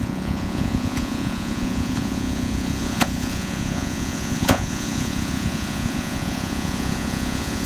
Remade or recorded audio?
remade